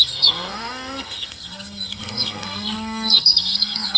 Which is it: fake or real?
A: fake